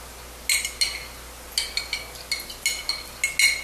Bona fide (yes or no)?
yes